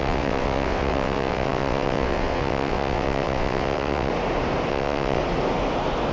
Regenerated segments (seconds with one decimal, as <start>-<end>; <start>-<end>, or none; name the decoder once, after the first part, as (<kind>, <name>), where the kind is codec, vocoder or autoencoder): 0.0-4.1 (vocoder, WaveNeXt); 4.7-5.2